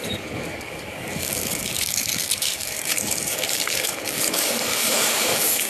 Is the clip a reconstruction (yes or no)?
yes